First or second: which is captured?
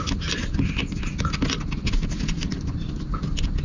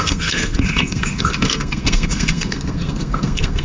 first